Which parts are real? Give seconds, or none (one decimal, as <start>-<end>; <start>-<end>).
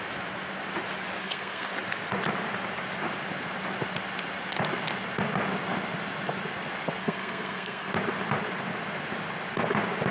0.0-1.2; 1.7-7.0; 7.9-10.1